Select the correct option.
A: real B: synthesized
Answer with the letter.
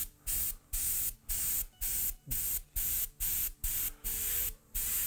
A